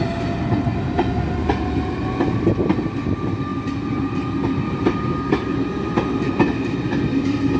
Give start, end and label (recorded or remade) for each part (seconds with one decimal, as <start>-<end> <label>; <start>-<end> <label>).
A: 0.0-7.6 recorded